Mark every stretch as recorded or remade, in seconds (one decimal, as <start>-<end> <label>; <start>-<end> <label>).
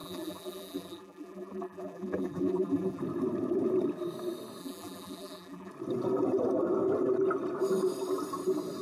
0.0-3.0 remade; 3.0-4.6 recorded; 4.6-5.7 remade; 5.7-8.8 recorded